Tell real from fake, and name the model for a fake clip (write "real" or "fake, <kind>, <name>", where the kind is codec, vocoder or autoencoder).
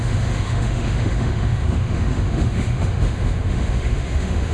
fake, autoencoder, DAC-VAE